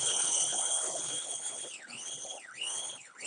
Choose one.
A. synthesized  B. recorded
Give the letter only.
A